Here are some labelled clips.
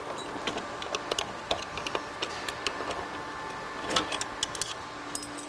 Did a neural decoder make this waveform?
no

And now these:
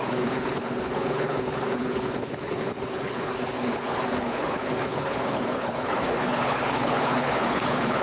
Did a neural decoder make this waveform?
yes